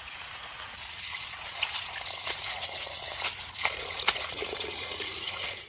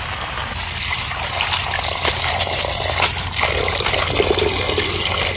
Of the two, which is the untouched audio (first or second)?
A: second